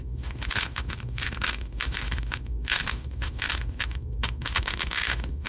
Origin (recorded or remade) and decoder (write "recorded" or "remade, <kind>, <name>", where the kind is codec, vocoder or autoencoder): remade, autoencoder, DAC-VAE